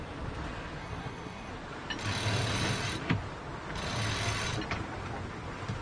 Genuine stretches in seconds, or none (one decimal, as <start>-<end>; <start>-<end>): 0.0-0.8; 1.5-5.8